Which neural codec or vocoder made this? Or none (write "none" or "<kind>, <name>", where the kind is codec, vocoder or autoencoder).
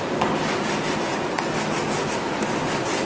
none